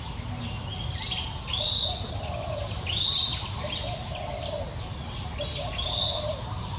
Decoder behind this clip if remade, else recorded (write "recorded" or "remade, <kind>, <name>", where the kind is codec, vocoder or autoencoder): recorded